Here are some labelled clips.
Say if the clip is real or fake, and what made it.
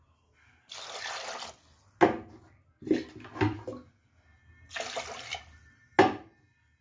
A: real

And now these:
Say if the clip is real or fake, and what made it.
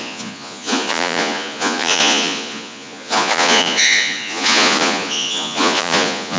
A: fake, vocoder, Vocos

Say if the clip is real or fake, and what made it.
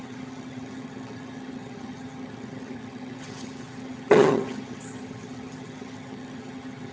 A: fake, vocoder, HiFi-GAN